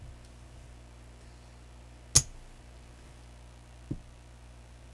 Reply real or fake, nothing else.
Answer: real